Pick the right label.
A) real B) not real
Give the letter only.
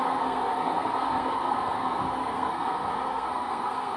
B